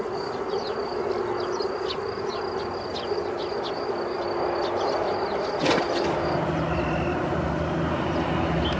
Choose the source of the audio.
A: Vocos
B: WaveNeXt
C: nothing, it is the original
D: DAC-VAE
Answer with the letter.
C